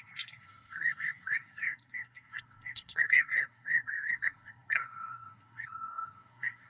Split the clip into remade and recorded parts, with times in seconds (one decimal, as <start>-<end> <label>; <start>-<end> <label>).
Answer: 0.0-6.7 remade